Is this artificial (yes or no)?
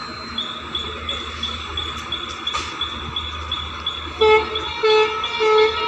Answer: no